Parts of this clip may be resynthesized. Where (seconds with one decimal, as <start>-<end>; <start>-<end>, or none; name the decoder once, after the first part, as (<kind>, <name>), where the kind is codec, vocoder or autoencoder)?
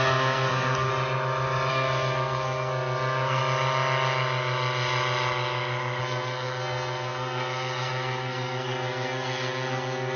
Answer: 0.0-0.9 (codec, SNAC); 1.7-3.4; 6.0-10.2